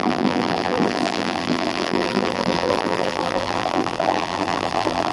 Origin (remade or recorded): remade